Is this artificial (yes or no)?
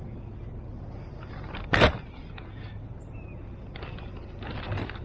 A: no